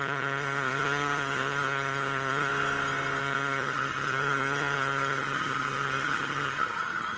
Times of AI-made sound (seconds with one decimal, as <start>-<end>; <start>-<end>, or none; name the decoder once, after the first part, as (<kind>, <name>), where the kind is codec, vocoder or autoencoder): 0.0-2.5 (vocoder, HiFi-GAN); 3.2-7.2